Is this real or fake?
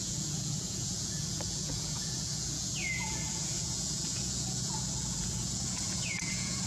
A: fake